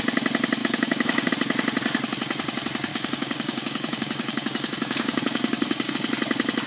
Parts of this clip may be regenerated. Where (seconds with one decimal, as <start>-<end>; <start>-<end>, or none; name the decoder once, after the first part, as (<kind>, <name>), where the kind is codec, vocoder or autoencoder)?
0.6-1.3 (codec, DAC); 2.9-5.9